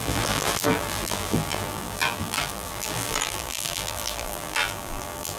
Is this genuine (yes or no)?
no